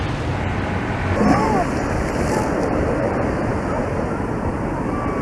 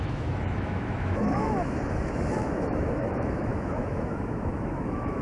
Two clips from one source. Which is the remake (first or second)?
second